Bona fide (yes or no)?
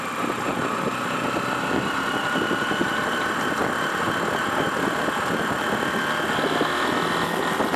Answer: yes